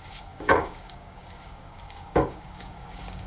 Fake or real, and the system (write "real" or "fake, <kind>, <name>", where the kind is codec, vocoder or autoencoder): fake, codec, DAC